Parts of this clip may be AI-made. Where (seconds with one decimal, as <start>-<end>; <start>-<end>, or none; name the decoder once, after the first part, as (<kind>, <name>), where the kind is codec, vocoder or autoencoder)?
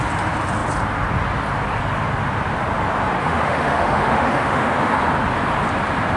3.2-5.0 (autoencoder, DAC-VAE)